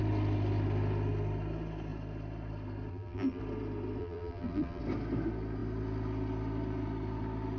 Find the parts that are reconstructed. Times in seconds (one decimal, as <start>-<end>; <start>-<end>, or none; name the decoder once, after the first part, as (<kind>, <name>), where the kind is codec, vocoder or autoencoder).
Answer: 2.9-3.4 (vocoder, BigVGAN v2); 4.0-4.8